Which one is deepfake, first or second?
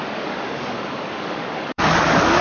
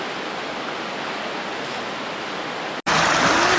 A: first